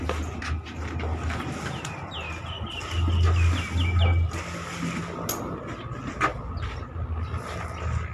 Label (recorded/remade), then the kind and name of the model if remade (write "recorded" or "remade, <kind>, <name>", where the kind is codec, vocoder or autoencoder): recorded